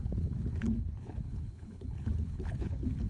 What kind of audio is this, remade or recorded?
remade